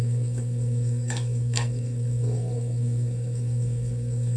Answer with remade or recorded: remade